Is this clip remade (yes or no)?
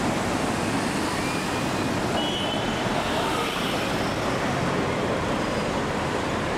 no